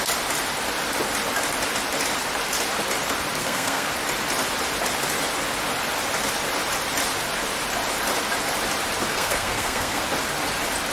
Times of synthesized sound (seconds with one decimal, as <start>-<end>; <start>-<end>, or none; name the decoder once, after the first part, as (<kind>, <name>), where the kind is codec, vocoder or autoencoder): 3.4-3.9 (codec, SNAC); 9.1-10.0